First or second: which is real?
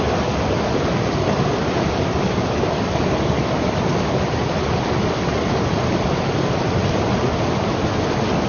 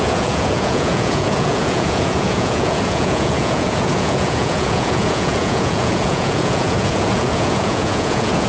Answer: first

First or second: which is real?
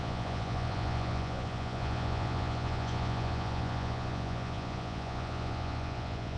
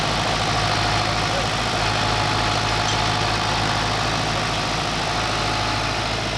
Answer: second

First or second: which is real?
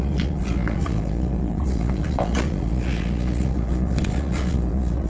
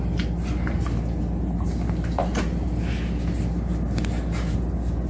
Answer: second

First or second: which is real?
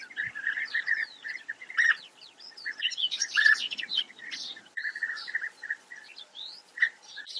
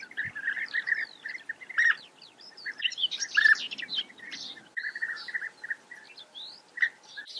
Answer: second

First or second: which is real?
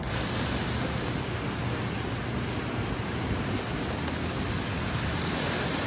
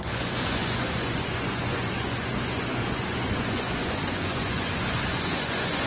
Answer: first